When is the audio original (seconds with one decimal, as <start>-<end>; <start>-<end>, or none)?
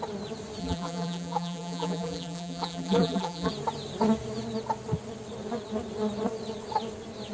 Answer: 0.0-0.6; 3.5-7.3